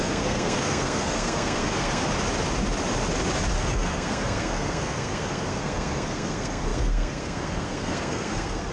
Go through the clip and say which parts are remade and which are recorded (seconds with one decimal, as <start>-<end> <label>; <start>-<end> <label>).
0.0-2.0 remade; 2.0-3.7 recorded; 3.7-8.7 remade